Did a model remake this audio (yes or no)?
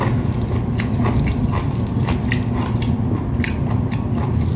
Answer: no